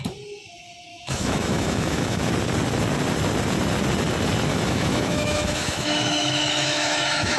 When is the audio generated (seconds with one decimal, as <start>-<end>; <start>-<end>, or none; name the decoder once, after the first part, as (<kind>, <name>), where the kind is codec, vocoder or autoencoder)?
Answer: 0.9-2.3 (autoencoder, DAC-VAE); 4.5-7.4